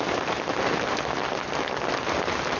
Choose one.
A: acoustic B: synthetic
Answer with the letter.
A